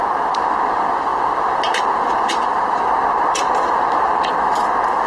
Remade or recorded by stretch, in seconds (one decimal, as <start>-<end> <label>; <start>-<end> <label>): 0.0-5.1 recorded